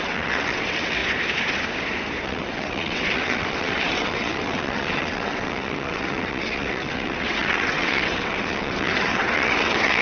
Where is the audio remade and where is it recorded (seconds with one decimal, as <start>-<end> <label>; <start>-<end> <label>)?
0.0-1.0 remade; 1.0-2.2 recorded; 2.2-10.0 remade

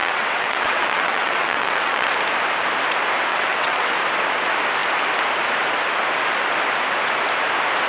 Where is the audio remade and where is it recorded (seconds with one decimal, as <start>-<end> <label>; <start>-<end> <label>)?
0.0-2.1 remade; 2.1-3.3 recorded; 3.3-3.9 remade; 3.9-7.9 recorded

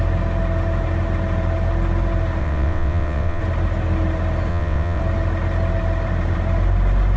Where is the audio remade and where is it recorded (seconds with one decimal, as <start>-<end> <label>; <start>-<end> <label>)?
0.0-2.4 recorded; 2.4-3.4 remade; 3.4-4.5 recorded; 4.5-5.0 remade; 5.0-7.2 recorded

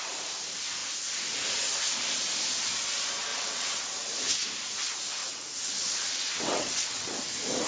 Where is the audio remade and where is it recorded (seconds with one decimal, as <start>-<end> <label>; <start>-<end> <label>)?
0.0-3.3 recorded; 3.3-3.8 remade; 3.8-5.2 recorded; 5.2-7.2 remade; 7.2-7.7 recorded

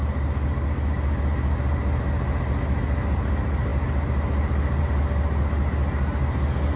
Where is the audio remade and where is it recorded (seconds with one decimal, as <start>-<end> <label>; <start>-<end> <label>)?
0.0-6.8 recorded

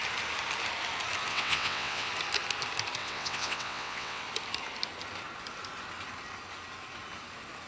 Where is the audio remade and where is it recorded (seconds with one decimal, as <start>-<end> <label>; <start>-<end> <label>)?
0.0-1.3 recorded; 1.3-2.1 remade; 2.1-3.0 recorded; 3.0-4.2 remade; 4.2-7.7 recorded

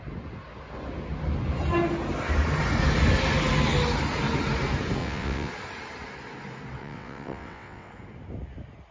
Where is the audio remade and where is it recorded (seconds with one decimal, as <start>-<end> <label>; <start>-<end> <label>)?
0.0-5.0 recorded; 5.0-5.5 remade; 5.5-6.8 recorded; 6.8-7.9 remade; 7.9-8.9 recorded

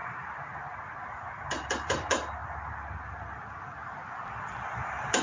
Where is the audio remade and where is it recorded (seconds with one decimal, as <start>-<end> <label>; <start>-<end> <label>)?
0.0-5.2 recorded